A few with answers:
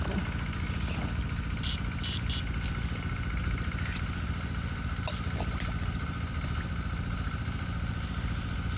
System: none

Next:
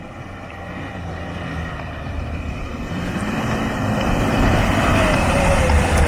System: vocoder, BigVGAN v2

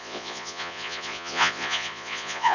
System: vocoder, Vocos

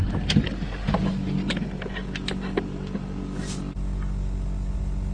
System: none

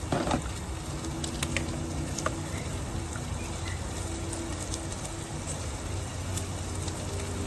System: none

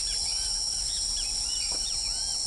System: none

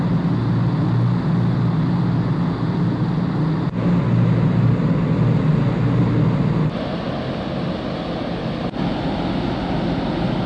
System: none